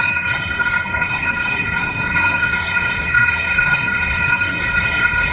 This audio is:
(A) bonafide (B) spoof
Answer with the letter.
B